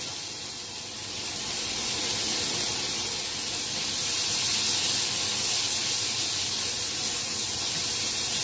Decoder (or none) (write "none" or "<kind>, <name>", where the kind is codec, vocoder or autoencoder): none